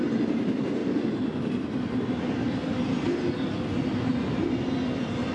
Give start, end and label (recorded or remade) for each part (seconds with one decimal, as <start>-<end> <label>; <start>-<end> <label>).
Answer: 0.0-5.3 recorded